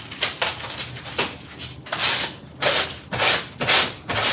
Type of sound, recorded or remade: recorded